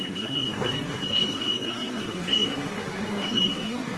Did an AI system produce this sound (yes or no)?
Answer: yes